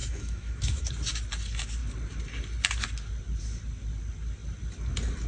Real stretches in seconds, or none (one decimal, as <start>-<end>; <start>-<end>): 0.9-5.3